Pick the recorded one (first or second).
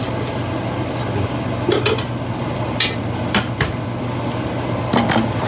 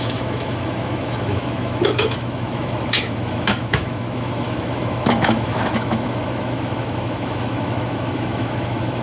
first